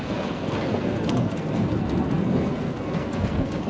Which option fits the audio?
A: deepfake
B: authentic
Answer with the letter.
A